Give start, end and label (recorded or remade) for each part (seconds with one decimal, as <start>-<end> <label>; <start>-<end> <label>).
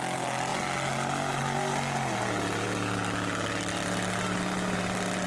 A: 0.0-5.3 recorded